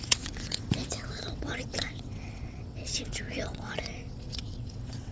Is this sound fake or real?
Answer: fake